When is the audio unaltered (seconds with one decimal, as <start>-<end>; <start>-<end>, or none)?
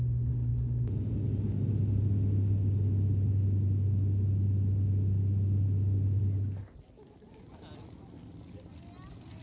0.0-9.4